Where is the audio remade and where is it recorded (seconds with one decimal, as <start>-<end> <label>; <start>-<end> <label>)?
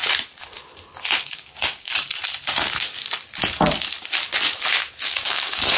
0.0-1.2 recorded; 1.2-1.9 remade; 1.9-5.0 recorded; 5.0-5.8 remade